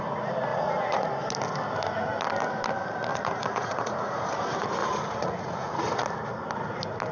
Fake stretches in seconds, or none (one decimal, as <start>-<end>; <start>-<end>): 0.5-1.1; 3.1-4.3; 4.8-5.8